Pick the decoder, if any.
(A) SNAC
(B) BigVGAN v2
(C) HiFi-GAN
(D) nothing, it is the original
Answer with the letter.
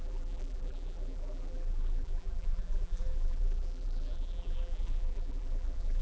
B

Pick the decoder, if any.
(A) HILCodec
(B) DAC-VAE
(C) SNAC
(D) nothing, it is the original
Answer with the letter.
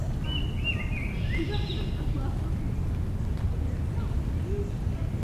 D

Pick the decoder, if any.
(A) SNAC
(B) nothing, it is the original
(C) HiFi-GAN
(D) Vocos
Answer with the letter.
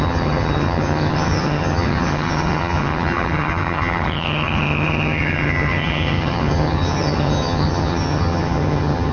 C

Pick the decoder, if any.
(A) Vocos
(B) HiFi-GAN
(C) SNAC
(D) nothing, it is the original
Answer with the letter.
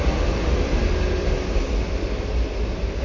D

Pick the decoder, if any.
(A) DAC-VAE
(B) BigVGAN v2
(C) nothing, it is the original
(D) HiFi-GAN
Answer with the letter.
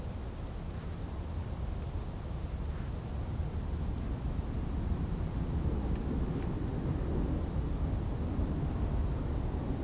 C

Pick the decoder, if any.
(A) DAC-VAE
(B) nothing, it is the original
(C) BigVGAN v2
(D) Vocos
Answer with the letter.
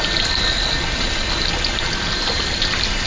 B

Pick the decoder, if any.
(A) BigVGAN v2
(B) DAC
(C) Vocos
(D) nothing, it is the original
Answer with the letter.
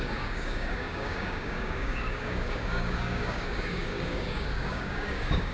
B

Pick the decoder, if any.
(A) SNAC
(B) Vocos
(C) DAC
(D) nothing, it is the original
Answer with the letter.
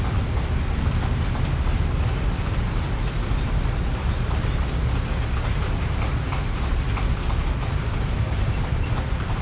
D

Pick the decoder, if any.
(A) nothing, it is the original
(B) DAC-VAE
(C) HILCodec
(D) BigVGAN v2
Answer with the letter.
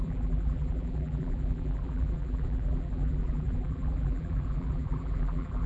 D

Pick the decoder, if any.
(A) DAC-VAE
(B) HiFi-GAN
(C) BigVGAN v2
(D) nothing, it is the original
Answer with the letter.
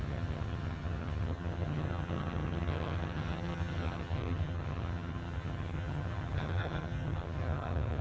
B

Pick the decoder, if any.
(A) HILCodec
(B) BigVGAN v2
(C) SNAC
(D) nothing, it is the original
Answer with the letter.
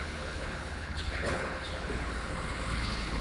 A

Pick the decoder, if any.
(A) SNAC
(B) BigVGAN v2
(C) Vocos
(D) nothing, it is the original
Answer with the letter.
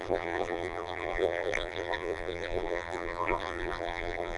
B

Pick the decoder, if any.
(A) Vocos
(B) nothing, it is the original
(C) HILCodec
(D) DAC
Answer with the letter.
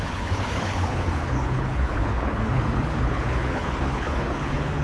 C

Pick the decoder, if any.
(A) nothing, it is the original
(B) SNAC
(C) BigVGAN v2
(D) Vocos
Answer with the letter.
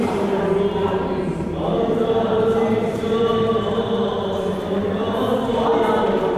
C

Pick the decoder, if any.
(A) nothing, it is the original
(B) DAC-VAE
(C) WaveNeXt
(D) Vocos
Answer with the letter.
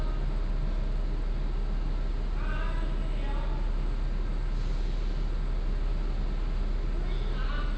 A